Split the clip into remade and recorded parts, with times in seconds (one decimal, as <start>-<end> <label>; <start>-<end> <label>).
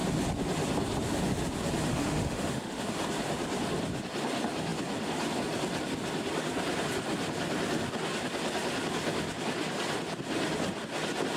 0.0-1.9 recorded; 1.9-2.8 remade; 2.8-11.4 recorded